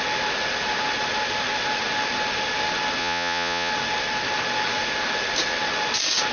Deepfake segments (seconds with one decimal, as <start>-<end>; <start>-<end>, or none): 3.0-3.7

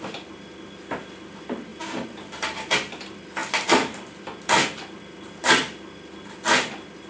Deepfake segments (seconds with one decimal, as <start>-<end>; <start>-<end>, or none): 1.7-2.7

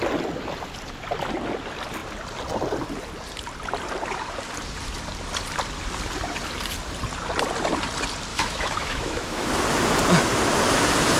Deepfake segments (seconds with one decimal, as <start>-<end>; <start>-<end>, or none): 8.3-9.5

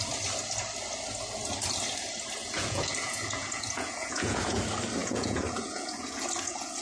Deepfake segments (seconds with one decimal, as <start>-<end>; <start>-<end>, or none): 2.4-4.6; 5.0-6.8